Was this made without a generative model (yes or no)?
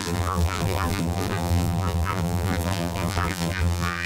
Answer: no